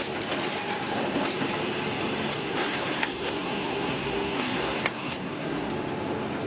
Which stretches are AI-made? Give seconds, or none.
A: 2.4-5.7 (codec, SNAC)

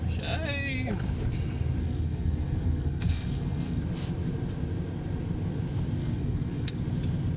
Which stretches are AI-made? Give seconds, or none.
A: 1.8-3.8 (codec, SNAC); 6.0-6.8

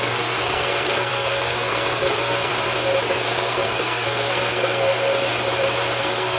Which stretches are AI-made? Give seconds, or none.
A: 0.0-2.5 (codec, SNAC); 3.1-5.3; 6.0-6.4

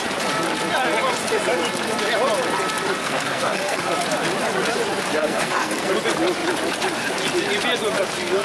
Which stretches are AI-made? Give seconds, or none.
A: 3.0-3.9 (codec, SNAC); 5.2-5.9

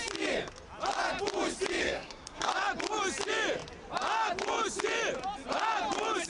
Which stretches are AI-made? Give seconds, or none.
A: 1.8-2.5 (codec, SNAC)